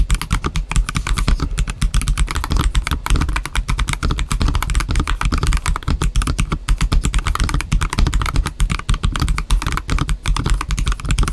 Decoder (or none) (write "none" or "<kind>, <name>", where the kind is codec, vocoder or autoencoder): none